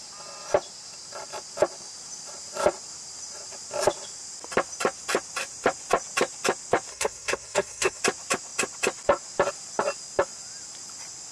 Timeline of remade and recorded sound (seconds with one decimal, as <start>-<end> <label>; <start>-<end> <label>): 0.0-6.9 recorded; 6.9-8.0 remade; 8.0-11.3 recorded